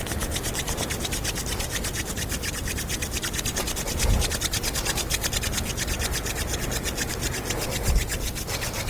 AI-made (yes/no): no